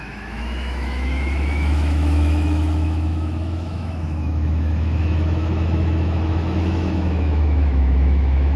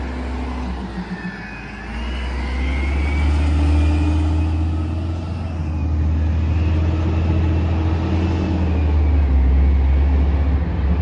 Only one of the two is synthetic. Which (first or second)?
first